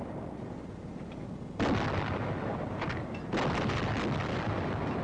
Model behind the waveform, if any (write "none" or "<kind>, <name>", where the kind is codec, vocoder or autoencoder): none